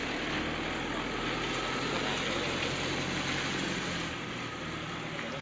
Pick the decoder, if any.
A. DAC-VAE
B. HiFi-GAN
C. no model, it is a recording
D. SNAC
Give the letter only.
C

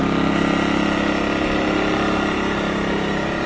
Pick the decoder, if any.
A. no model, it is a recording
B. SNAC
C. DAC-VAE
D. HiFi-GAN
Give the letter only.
A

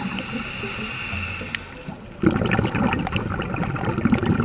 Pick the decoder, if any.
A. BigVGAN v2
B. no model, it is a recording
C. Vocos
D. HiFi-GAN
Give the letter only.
B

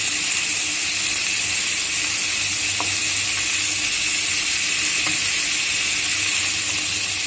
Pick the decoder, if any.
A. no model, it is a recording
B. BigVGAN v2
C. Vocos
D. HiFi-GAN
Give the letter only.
A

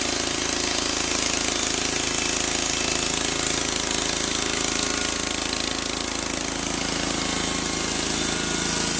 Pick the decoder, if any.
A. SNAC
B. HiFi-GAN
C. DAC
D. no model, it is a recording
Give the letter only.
D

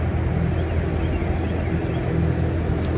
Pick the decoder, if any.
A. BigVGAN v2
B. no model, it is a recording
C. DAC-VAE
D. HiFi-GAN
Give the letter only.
B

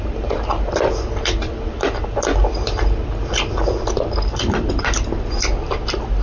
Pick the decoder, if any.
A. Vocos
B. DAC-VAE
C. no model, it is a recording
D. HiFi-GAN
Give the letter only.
C